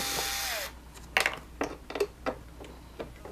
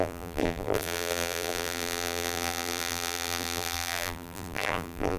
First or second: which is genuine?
first